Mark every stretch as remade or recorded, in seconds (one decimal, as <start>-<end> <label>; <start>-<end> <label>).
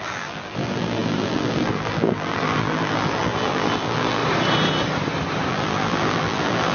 0.0-4.2 remade; 4.2-5.5 recorded; 5.5-6.7 remade